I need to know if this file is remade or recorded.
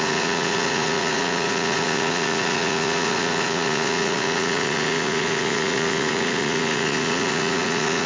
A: remade